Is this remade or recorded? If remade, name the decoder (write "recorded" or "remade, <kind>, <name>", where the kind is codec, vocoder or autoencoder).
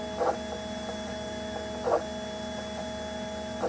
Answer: recorded